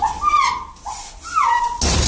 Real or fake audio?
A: real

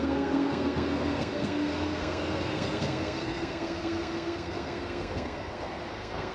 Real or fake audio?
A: fake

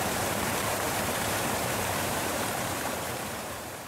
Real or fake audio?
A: fake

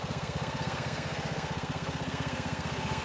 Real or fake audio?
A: fake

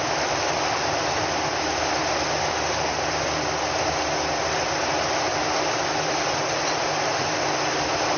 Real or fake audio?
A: real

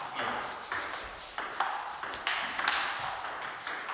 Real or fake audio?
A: real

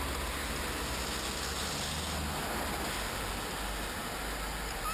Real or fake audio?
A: real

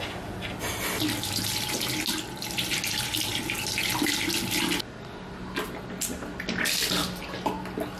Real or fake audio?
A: real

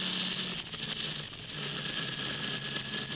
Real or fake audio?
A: real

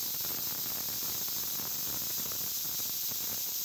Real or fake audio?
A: real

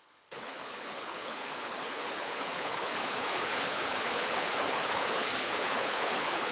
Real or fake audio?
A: fake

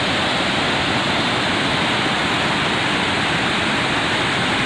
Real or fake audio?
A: real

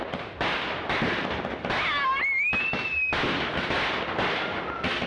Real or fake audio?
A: real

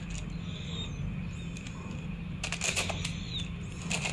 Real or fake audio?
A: real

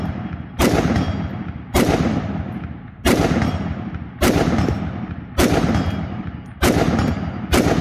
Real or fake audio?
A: real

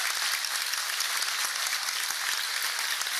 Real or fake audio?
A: real